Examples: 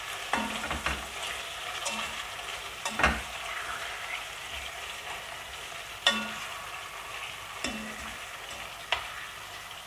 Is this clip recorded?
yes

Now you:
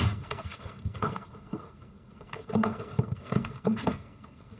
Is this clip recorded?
no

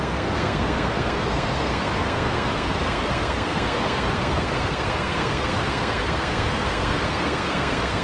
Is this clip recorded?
no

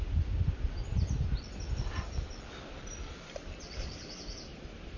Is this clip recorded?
yes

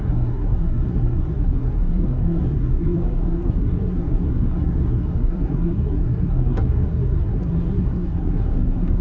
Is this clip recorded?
no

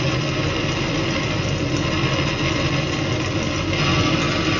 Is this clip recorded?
yes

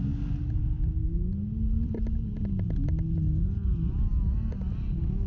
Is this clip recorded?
yes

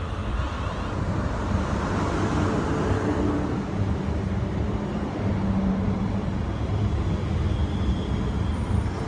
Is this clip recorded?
yes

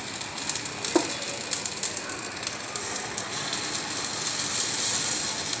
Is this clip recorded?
yes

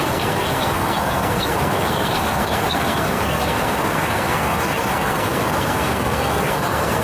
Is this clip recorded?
no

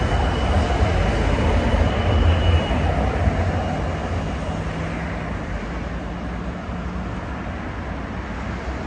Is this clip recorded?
yes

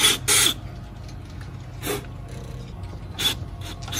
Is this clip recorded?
yes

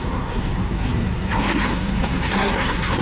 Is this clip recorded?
no